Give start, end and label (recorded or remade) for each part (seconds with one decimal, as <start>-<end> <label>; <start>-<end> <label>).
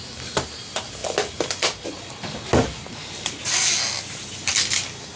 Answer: 0.0-5.2 recorded